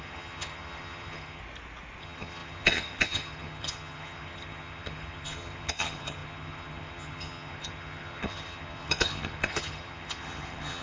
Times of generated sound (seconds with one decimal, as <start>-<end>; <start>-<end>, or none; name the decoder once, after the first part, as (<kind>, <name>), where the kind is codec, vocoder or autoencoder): 0.0-1.4 (vocoder, HiFi-GAN); 2.0-10.8